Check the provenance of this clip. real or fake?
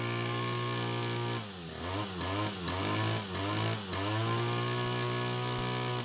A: real